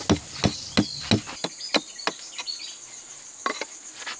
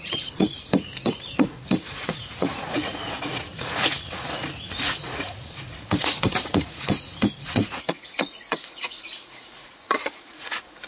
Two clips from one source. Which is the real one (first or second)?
first